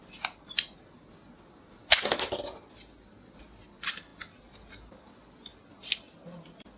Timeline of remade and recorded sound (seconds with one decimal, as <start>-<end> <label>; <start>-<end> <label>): 0.0-6.8 recorded